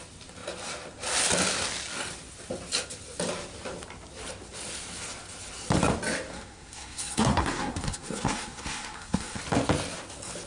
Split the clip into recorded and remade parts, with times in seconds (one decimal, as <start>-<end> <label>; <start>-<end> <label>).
0.0-6.3 recorded; 6.3-9.4 remade; 9.4-10.5 recorded